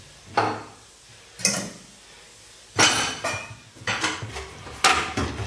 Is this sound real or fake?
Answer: real